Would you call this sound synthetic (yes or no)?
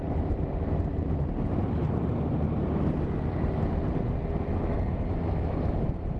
no